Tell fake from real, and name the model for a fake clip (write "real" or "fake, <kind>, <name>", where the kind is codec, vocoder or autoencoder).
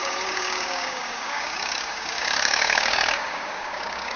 fake, codec, DAC